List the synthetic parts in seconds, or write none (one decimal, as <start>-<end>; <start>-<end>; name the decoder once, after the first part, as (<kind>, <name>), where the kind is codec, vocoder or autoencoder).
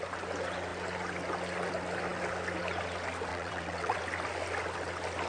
3.3-4.0 (vocoder, WaveNeXt)